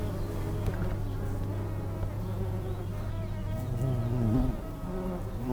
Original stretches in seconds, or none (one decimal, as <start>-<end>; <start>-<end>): 0.0-2.1; 2.8-5.5